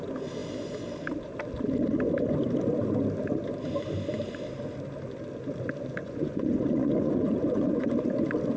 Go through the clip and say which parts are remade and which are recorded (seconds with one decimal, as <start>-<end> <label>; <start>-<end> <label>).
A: 0.0-6.0 recorded; 6.0-8.0 remade; 8.0-8.6 recorded